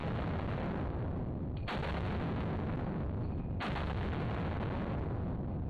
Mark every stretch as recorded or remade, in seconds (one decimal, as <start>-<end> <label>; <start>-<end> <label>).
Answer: 0.0-5.7 recorded